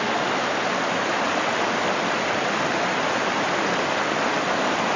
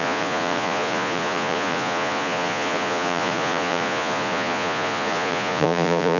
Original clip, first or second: first